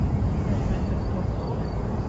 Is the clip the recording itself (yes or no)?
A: no